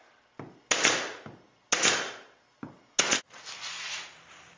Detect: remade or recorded recorded